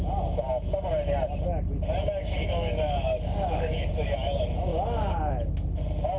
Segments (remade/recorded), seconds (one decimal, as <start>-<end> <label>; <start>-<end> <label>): 0.0-2.4 recorded; 2.4-3.9 remade; 3.9-4.7 recorded; 4.7-5.3 remade; 5.3-6.2 recorded